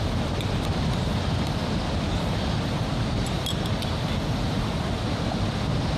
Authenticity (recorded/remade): recorded